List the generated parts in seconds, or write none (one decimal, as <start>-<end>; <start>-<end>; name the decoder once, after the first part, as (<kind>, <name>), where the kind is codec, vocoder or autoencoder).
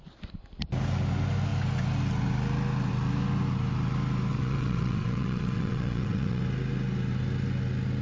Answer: 4.3-6.4 (vocoder, WaveNeXt)